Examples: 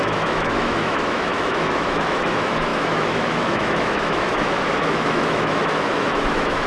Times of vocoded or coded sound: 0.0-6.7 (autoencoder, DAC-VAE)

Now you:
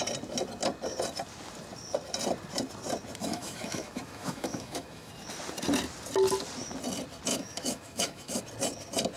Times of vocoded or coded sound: 3.2-5.1 (autoencoder, DAC-VAE); 7.3-8.4

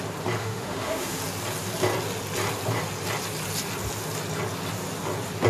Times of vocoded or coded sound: 0.4-1.2 (autoencoder, DAC-VAE)

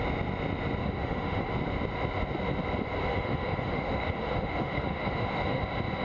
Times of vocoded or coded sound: 0.8-1.5 (autoencoder, DAC-VAE); 3.1-5.6

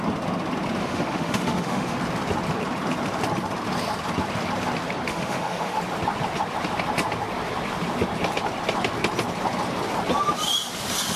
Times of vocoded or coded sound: 0.8-2.0 (autoencoder, DAC-VAE); 5.1-5.8

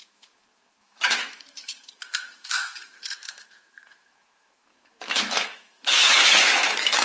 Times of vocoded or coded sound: 0.0-7.0 (autoencoder, DAC-VAE)